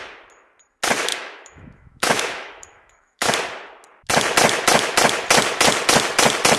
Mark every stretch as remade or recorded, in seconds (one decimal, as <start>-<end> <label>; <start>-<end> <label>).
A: 0.0-1.1 recorded; 1.1-3.3 remade; 3.3-6.6 recorded